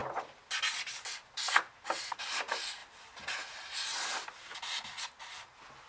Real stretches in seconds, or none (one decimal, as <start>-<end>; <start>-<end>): 0.0-5.9